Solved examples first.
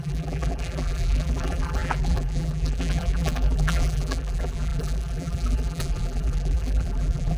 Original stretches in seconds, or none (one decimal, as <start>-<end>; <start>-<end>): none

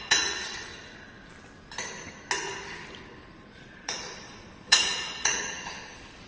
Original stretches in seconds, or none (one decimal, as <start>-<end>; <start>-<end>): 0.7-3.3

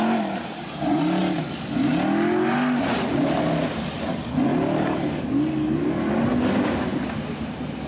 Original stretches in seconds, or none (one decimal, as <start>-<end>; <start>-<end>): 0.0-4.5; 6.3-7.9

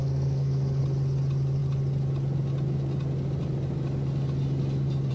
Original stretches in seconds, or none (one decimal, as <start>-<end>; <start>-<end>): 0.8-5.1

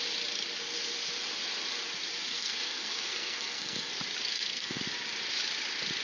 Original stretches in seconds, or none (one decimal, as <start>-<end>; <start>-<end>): 0.0-2.3; 3.9-4.3; 4.8-6.0